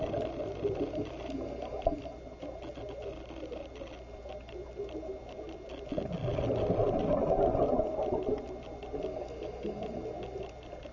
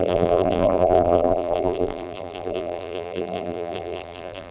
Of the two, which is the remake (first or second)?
second